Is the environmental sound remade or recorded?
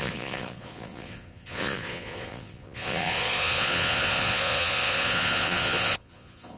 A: remade